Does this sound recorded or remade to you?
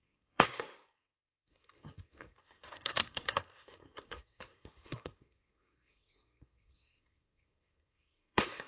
remade